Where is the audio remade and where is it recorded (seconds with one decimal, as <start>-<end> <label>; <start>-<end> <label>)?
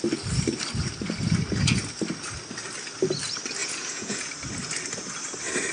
0.0-3.6 recorded; 3.6-4.3 remade; 4.3-5.7 recorded